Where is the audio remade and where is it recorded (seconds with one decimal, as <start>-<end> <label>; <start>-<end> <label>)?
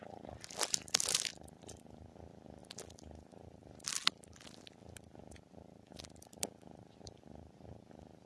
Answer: 0.0-8.3 recorded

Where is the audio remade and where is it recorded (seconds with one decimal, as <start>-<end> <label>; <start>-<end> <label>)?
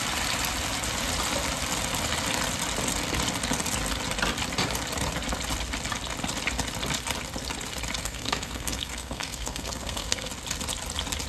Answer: 0.0-8.0 recorded; 8.0-10.3 remade; 10.3-11.3 recorded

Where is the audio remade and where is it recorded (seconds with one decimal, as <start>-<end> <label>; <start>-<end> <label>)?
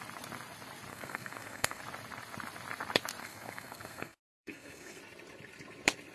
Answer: 0.0-0.9 recorded; 0.9-1.8 remade; 1.8-3.2 recorded; 3.2-5.0 remade; 5.0-6.1 recorded